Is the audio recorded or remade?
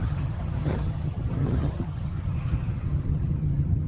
remade